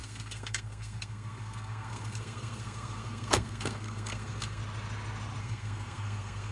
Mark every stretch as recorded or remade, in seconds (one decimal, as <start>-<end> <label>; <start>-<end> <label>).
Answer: 0.0-4.6 remade; 4.6-5.4 recorded; 5.4-6.5 remade